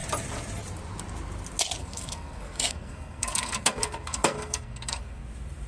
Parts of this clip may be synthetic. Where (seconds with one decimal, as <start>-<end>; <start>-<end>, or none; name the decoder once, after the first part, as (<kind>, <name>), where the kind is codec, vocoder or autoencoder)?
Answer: 1.8-5.2 (codec, SNAC)